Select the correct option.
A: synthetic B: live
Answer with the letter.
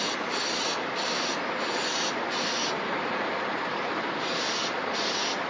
B